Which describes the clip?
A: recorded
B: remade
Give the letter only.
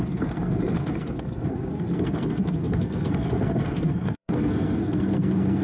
B